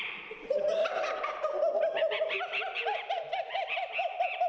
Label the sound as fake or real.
real